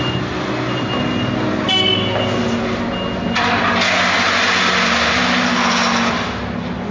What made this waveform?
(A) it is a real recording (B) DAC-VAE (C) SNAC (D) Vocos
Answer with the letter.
A